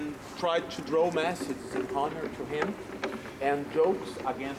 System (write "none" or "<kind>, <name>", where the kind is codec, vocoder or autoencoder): none